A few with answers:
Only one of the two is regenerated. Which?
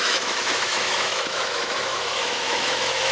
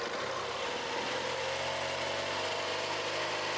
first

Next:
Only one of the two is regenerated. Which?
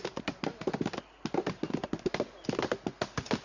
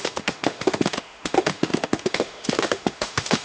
second